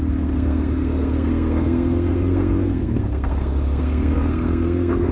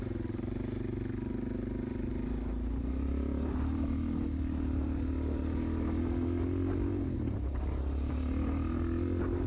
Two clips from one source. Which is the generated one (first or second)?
first